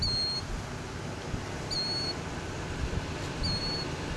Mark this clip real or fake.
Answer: real